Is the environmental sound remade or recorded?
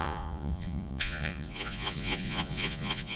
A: remade